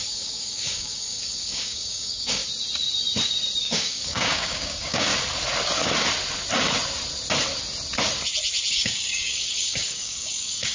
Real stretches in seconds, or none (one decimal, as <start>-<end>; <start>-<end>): 2.4-3.6; 5.1-8.7